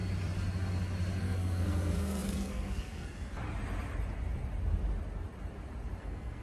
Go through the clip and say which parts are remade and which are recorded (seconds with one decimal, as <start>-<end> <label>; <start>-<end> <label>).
0.0-1.2 recorded; 1.2-3.4 remade; 3.4-6.0 recorded; 6.0-6.4 remade